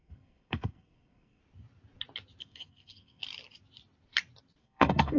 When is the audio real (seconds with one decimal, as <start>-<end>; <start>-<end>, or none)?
1.4-2.4; 3.2-4.6